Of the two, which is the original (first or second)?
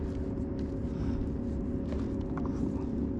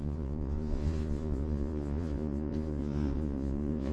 first